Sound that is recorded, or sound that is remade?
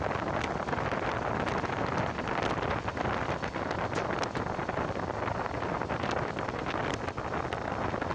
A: recorded